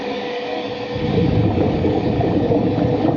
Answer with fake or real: fake